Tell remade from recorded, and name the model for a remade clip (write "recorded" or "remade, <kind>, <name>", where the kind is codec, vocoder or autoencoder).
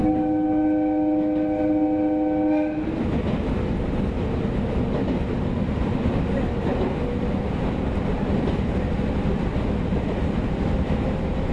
recorded